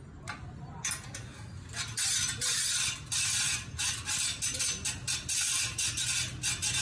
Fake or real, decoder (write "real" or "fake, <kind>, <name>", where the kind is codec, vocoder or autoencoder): real